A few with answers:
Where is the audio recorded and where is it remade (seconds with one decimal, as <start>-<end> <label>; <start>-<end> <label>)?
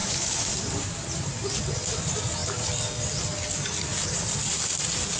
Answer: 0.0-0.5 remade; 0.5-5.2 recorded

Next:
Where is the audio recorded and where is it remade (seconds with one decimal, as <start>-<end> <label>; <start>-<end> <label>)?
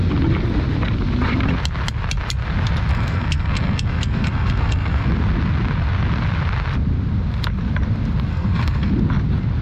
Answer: 0.0-2.9 recorded; 2.9-5.1 remade; 5.1-8.3 recorded; 8.3-8.9 remade; 8.9-9.6 recorded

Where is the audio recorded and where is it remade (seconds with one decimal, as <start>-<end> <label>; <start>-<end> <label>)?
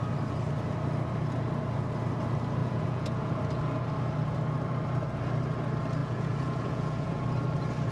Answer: 0.0-2.6 recorded; 2.6-3.4 remade; 3.4-6.0 recorded; 6.0-7.2 remade; 7.2-7.9 recorded